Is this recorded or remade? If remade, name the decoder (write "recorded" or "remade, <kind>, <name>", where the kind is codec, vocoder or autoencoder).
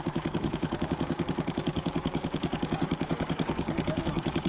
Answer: remade, codec, DAC